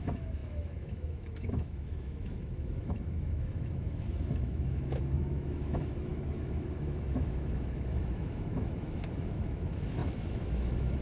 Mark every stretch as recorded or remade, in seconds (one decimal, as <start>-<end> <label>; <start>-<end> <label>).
0.0-11.0 remade